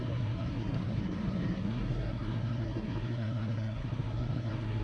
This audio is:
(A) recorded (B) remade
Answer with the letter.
B